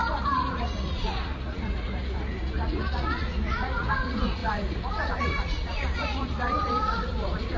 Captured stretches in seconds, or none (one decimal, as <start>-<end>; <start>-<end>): none